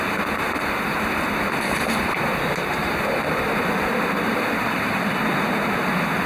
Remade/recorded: recorded